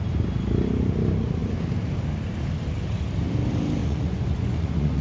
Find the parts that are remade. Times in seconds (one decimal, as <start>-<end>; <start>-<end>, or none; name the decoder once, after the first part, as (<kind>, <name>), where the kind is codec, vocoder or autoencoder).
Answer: 3.8-5.0 (vocoder, Vocos)